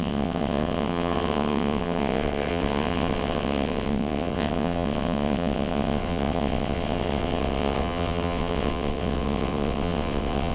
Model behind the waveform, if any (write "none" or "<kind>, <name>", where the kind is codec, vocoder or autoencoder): vocoder, WaveNeXt